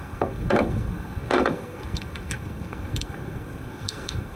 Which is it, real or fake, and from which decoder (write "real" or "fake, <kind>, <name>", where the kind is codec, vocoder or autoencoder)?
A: fake, codec, SNAC